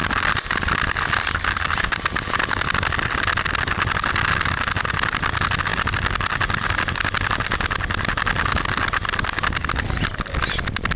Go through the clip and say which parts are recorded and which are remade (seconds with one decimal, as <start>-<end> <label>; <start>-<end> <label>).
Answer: 0.0-11.0 recorded